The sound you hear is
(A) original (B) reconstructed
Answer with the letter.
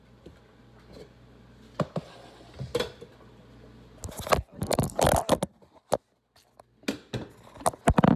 A